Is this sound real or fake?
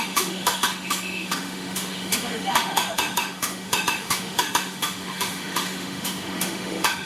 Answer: fake